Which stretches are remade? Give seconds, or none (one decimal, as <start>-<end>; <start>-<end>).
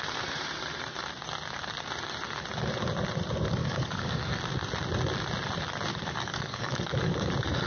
3.6-4.3; 5.9-7.3